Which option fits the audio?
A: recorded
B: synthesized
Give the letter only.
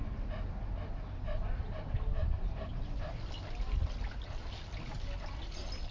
A